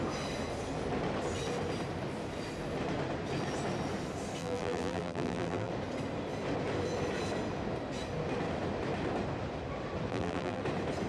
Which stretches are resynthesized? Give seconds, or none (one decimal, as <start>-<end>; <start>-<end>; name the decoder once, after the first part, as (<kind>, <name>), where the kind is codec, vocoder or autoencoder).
4.4-5.7 (vocoder, BigVGAN v2); 10.1-10.6